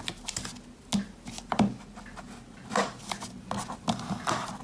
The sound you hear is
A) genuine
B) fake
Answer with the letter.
A